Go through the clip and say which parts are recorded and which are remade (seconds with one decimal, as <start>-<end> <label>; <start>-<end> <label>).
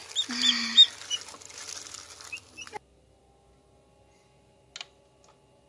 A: 0.0-5.7 recorded